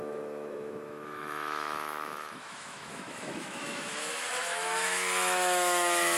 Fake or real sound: fake